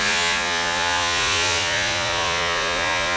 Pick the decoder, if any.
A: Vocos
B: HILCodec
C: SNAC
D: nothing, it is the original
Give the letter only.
A